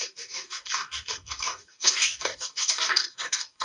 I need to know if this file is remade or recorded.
remade